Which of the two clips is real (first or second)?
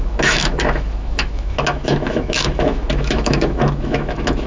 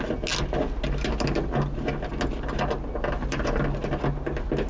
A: second